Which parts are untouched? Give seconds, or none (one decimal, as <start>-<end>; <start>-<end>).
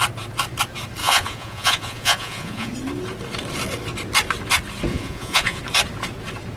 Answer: 0.0-1.0; 2.7-4.9; 5.6-6.6